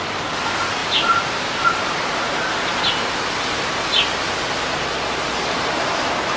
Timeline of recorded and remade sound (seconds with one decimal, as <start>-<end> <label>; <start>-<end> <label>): 0.0-6.4 recorded